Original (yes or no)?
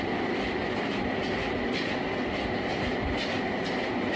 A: yes